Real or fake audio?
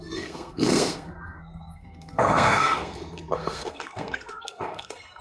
fake